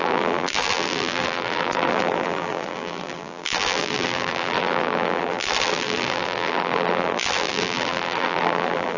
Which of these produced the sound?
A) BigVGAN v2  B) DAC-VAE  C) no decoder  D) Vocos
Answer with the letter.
A